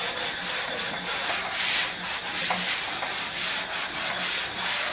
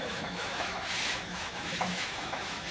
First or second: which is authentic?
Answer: first